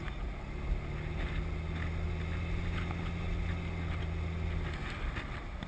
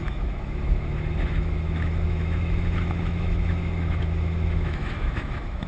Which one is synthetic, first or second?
second